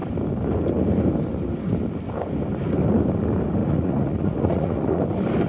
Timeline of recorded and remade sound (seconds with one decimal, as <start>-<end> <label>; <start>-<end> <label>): 0.0-3.6 recorded; 3.6-5.0 remade; 5.0-5.5 recorded